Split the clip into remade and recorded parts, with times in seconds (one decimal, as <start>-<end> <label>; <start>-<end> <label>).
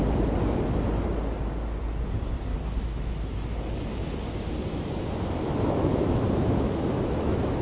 0.0-2.5 recorded; 2.5-3.1 remade; 3.1-4.7 recorded; 4.7-7.6 remade